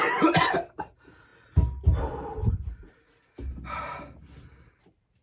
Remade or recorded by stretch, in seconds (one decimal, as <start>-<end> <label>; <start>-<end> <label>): 0.0-5.2 recorded